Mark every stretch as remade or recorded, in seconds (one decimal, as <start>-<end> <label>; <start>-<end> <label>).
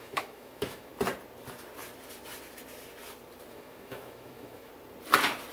0.0-0.9 remade; 0.9-3.5 recorded; 3.5-4.7 remade; 4.7-5.5 recorded